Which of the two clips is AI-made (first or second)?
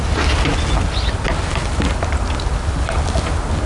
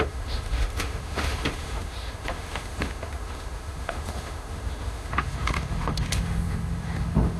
second